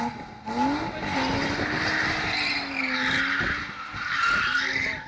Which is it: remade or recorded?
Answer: recorded